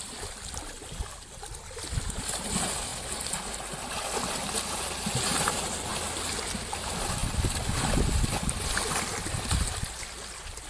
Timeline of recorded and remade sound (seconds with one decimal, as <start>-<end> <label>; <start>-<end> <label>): 0.0-10.7 recorded